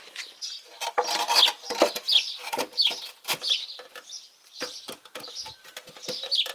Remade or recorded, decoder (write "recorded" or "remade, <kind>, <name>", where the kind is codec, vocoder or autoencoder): recorded